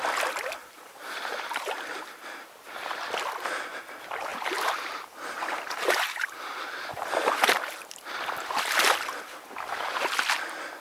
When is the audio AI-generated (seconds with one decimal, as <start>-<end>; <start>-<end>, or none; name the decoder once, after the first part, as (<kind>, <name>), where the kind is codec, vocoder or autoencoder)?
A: 0.6-1.7 (vocoder, BigVGAN v2); 4.3-8.1